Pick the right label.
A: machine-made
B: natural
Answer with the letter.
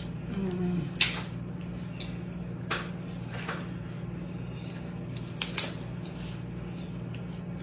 B